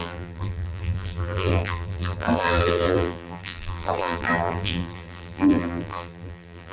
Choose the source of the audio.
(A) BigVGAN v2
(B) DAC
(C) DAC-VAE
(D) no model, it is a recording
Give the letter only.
A